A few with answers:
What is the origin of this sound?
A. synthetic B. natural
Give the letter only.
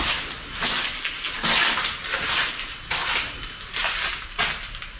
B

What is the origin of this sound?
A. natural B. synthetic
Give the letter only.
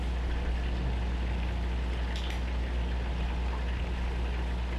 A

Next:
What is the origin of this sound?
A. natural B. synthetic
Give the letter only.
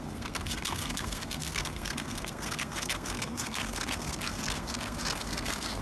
B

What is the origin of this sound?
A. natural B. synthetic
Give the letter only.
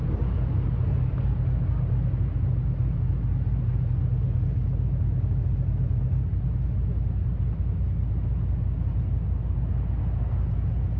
A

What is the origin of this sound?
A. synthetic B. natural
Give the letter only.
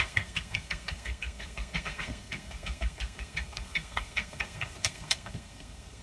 A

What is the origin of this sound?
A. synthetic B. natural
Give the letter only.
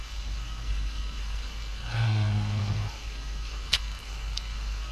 A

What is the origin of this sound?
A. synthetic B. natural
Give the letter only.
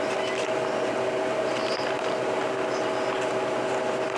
B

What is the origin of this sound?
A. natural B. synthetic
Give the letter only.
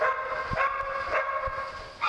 A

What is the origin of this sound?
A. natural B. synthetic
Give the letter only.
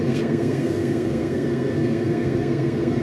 B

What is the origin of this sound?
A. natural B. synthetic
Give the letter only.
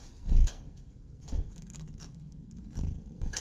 B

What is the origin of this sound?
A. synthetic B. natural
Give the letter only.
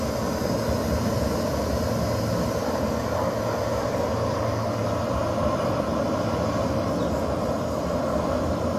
B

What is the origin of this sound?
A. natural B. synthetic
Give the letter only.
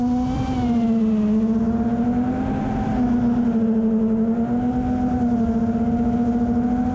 A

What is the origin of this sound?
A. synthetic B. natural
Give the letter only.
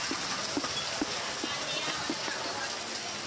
B